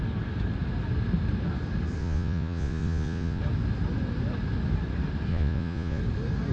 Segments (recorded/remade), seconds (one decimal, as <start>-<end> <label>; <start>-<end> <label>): 0.0-2.0 recorded; 2.0-3.4 remade; 3.4-5.3 recorded; 5.3-6.0 remade; 6.0-6.5 recorded

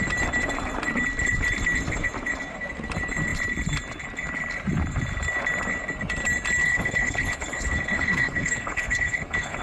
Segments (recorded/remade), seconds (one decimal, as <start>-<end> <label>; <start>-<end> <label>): 0.0-6.6 recorded; 6.6-9.6 remade

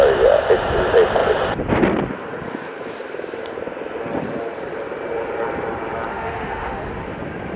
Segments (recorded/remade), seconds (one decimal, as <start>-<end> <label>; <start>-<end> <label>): 0.0-6.1 recorded; 6.1-6.9 remade; 6.9-7.6 recorded

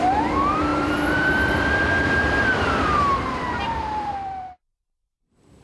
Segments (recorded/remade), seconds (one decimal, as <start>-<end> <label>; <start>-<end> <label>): 0.0-5.6 remade

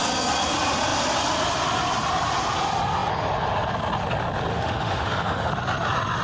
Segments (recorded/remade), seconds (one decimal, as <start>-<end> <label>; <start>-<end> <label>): 0.0-4.5 recorded; 4.5-5.5 remade; 5.5-6.2 recorded

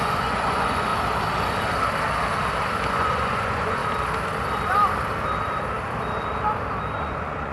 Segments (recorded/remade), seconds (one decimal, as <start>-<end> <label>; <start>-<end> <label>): 0.0-0.9 remade; 0.9-2.9 recorded; 2.9-3.8 remade; 3.8-7.0 recorded; 7.0-7.5 remade

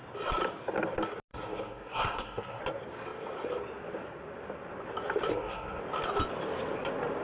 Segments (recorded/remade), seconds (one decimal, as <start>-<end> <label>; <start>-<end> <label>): 0.0-1.3 recorded; 1.3-2.6 remade; 2.6-5.3 recorded; 5.3-5.8 remade; 5.8-7.2 recorded

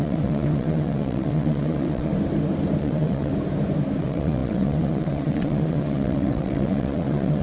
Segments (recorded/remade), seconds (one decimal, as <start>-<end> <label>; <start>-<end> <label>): 0.0-2.1 remade; 2.1-2.8 recorded; 2.8-3.3 remade; 3.3-4.0 recorded; 4.0-7.4 remade